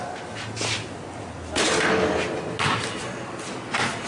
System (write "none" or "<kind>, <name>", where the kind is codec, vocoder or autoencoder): none